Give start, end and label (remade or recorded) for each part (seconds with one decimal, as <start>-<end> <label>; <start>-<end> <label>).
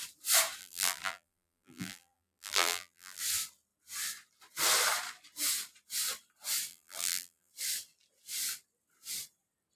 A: 0.0-0.6 recorded; 0.6-3.2 remade; 3.2-6.7 recorded; 6.7-7.5 remade; 7.5-9.8 recorded